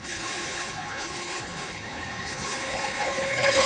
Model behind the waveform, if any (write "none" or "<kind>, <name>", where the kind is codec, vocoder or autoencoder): codec, HILCodec